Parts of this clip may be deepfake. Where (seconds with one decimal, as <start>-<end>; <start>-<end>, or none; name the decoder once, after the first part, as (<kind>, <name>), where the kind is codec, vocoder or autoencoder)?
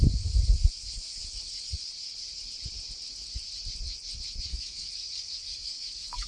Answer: 4.5-6.3 (codec, DAC)